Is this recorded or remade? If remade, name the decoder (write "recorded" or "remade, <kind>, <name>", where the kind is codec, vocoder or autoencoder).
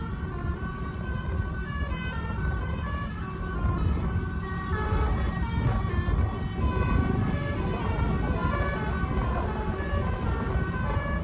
recorded